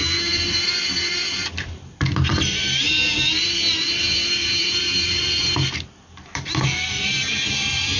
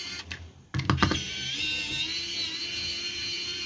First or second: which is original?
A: second